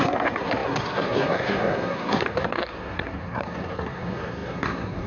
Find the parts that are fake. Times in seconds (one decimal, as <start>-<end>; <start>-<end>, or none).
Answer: 0.0-5.1